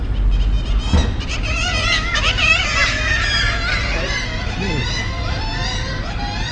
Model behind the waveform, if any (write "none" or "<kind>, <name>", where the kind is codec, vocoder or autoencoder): none